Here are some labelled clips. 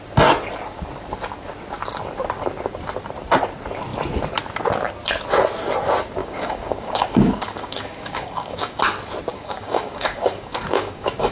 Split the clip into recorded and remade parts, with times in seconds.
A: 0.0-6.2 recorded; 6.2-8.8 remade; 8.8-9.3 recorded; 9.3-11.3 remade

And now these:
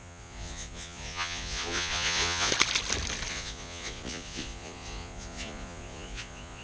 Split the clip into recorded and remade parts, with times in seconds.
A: 0.0-2.5 remade; 2.5-3.3 recorded; 3.3-6.6 remade

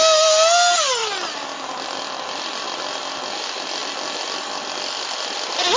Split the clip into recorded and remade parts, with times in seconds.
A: 0.0-3.8 recorded; 3.8-5.8 remade

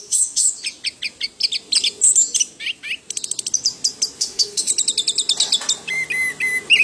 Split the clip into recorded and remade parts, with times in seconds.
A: 0.0-0.5 remade; 0.5-4.2 recorded; 4.2-4.7 remade; 4.7-6.8 recorded

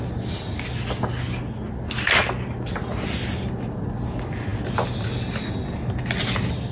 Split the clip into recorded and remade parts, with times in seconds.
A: 0.0-6.7 recorded

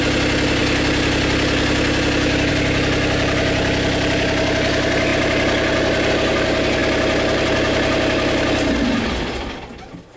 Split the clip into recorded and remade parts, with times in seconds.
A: 0.0-10.2 recorded

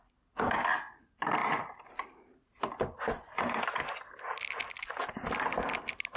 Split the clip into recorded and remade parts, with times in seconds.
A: 0.0-1.4 recorded; 1.4-3.7 remade; 3.7-6.2 recorded

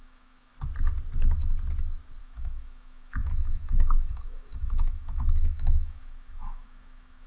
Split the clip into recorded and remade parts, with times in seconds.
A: 0.0-0.5 remade; 0.5-2.2 recorded; 2.2-7.3 remade